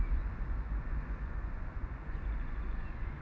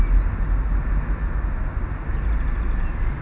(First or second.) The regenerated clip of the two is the first